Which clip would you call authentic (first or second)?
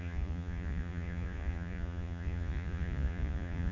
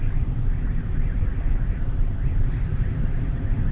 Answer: second